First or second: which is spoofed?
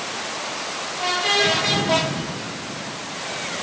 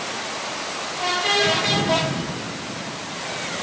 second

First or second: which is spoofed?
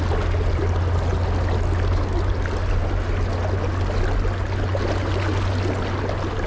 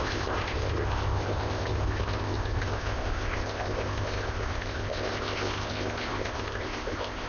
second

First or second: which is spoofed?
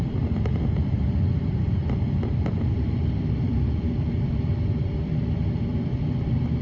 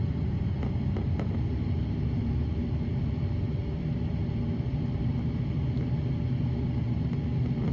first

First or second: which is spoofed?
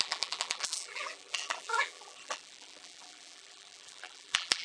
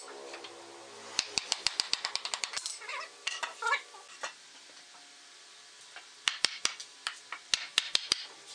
first